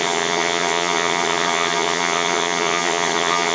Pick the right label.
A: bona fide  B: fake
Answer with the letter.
B